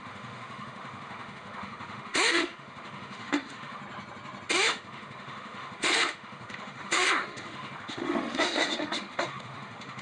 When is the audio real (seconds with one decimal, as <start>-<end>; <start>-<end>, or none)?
3.8-4.6